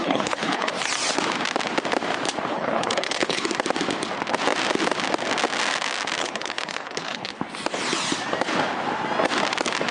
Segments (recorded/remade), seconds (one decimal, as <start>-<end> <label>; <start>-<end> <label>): 0.0-0.7 remade; 0.7-2.5 recorded; 2.5-3.5 remade; 3.5-6.2 recorded; 6.2-7.4 remade; 7.4-9.9 recorded